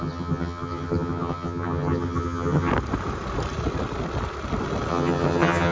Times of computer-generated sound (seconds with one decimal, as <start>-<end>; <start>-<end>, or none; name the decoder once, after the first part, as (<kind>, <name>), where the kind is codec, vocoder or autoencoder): 0.0-2.7 (vocoder, HiFi-GAN); 4.9-5.7